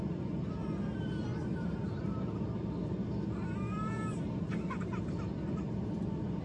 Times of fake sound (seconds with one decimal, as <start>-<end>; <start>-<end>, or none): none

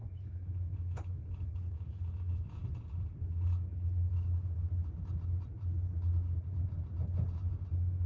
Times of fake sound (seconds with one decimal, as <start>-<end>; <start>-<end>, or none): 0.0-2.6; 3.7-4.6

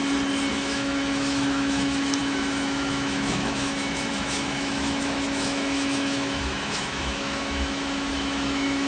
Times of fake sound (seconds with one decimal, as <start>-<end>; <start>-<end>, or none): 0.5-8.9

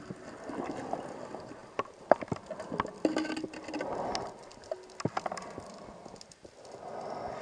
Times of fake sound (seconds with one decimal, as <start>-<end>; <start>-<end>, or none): none